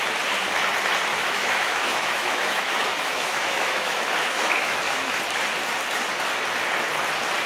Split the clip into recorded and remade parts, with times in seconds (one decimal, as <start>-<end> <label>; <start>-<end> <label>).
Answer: 0.0-1.1 recorded; 1.1-5.1 remade; 5.1-7.5 recorded